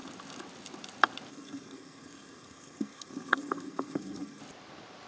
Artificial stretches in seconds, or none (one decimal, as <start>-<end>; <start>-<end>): 1.3-4.4